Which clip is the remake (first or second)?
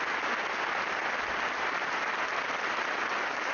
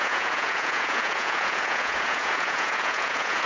second